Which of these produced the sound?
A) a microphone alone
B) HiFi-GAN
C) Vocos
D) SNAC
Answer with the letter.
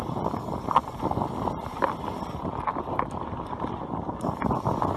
A